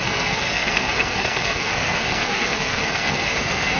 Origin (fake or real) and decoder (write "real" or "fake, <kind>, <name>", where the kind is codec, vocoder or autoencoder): fake, codec, SNAC